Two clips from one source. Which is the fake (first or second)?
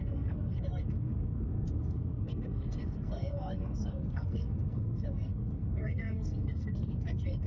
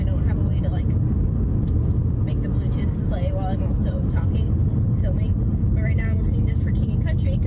first